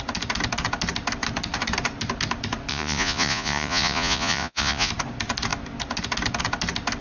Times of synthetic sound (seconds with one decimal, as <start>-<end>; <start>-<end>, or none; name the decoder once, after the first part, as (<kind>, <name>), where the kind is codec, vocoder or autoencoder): 2.7-4.9 (vocoder, Vocos)